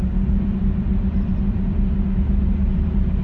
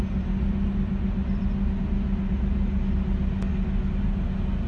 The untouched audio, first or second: second